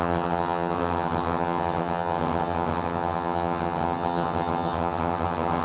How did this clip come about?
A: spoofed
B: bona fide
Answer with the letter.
A